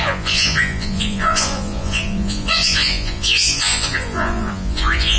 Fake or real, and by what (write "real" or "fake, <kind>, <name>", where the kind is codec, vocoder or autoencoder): fake, vocoder, Vocos